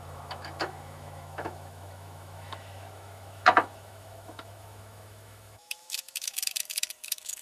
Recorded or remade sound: remade